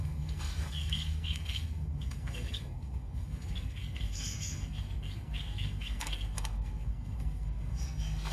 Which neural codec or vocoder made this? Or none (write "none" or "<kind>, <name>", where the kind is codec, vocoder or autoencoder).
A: codec, SNAC